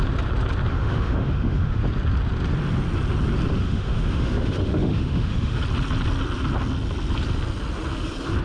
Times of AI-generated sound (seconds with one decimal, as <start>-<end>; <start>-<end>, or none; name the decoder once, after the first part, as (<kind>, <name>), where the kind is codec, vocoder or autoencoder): 0.7-1.8 (autoencoder, DAC-VAE); 3.5-5.6